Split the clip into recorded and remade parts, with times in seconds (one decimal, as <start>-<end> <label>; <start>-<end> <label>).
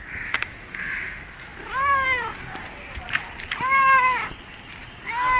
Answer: 0.0-5.4 recorded